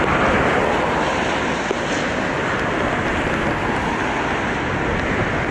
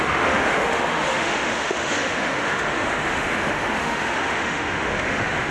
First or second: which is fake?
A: second